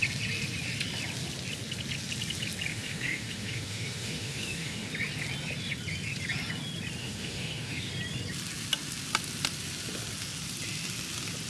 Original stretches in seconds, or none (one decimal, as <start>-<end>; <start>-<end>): 0.0-2.7; 4.9-7.0; 7.9-11.5